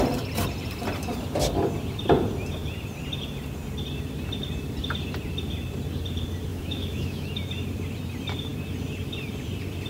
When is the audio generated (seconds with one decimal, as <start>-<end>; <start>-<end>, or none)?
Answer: 6.5-7.3

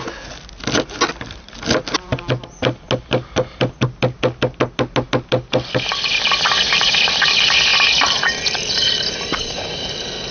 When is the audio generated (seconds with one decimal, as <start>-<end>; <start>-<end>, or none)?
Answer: none

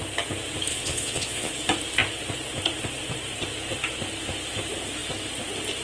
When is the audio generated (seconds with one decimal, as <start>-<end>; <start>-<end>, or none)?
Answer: 0.7-1.5